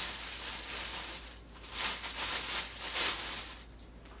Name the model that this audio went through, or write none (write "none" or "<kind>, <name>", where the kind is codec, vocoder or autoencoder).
none